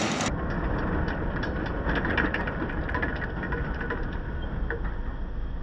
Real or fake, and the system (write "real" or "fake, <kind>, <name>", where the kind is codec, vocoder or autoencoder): real